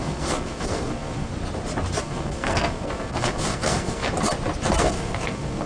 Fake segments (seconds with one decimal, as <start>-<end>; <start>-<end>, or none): 0.0-1.3; 2.0-4.1; 4.8-5.7

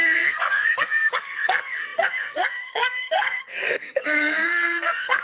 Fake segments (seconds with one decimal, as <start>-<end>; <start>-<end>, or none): 0.0-5.2

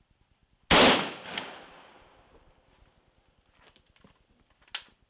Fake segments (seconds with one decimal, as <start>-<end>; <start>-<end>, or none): none

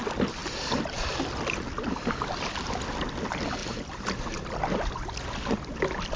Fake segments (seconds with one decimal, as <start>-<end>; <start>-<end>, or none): none

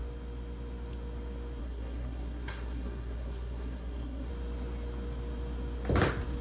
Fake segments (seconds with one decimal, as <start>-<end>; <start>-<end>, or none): 1.6-4.3

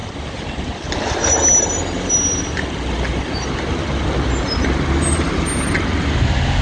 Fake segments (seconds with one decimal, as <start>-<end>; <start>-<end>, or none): none